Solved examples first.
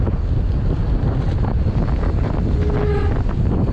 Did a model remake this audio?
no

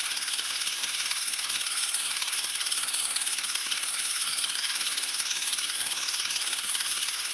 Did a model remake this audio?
yes